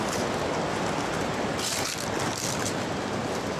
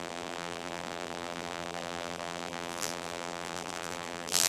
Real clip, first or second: first